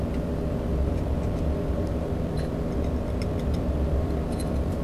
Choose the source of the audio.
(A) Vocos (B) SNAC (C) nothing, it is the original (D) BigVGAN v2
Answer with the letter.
D